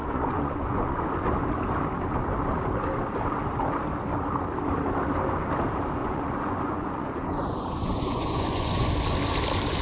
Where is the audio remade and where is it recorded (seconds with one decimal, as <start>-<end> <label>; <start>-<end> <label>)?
0.0-1.1 remade; 1.1-6.0 recorded; 6.0-8.9 remade; 8.9-9.8 recorded